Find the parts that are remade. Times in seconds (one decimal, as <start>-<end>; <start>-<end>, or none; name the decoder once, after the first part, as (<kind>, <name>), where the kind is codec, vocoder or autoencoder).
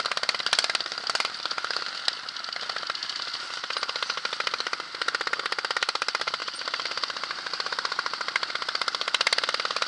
6.4-8.5 (vocoder, BigVGAN v2)